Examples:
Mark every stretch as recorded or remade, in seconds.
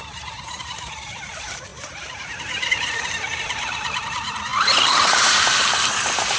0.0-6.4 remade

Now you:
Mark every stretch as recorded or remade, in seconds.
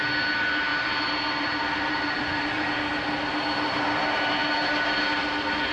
0.0-0.7 recorded; 0.7-2.7 remade; 2.7-5.7 recorded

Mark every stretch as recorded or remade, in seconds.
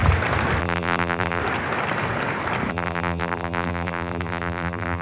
0.0-0.6 recorded; 0.6-1.4 remade; 1.4-2.7 recorded; 2.7-5.0 remade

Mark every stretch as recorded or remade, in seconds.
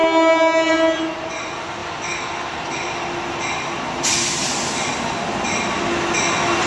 0.0-1.8 recorded; 1.8-4.5 remade; 4.5-6.7 recorded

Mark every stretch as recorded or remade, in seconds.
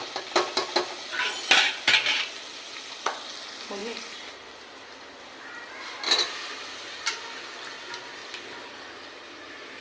0.0-2.1 recorded; 2.1-3.2 remade; 3.2-3.8 recorded; 3.8-7.0 remade; 7.0-9.8 recorded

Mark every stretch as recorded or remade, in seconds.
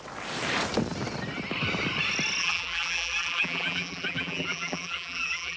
0.0-2.4 recorded; 2.4-5.6 remade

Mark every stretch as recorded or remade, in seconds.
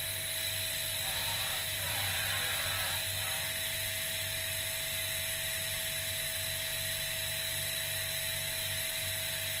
0.0-1.2 recorded; 1.2-2.2 remade; 2.2-9.6 recorded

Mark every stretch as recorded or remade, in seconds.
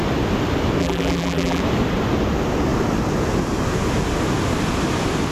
0.0-0.8 recorded; 0.8-1.6 remade; 1.6-5.3 recorded